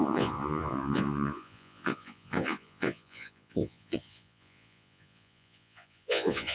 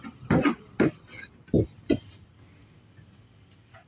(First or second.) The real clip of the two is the second